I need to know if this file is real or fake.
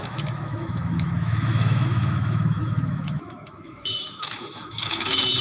fake